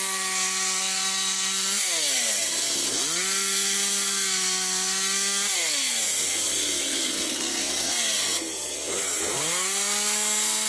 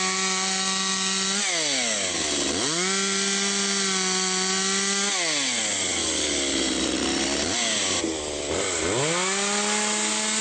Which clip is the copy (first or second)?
first